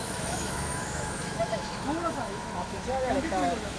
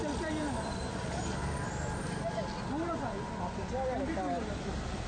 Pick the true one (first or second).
second